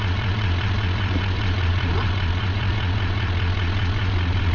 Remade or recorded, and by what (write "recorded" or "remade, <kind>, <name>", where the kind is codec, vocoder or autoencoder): remade, vocoder, Vocos